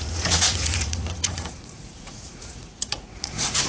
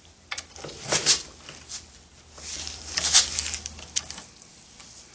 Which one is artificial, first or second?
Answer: first